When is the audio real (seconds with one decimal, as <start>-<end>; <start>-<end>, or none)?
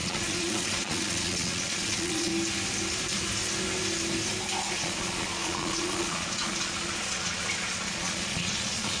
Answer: 2.3-4.7